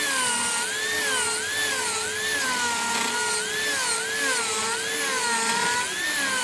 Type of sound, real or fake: real